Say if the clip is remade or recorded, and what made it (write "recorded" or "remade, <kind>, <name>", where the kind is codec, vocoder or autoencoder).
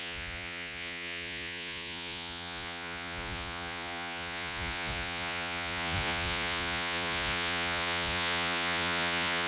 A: remade, vocoder, Vocos